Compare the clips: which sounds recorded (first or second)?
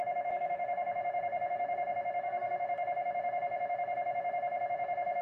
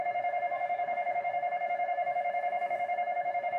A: first